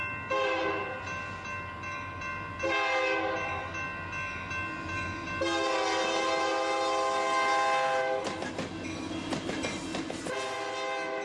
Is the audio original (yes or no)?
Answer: yes